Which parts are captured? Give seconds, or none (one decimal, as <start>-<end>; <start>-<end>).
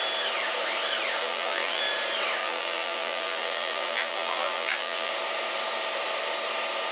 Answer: 0.0-1.2; 1.8-2.4; 5.1-6.9